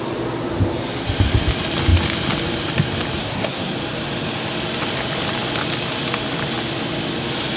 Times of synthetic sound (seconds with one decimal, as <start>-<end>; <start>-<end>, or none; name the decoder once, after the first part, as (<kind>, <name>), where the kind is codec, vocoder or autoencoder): 3.2-3.7 (codec, SNAC)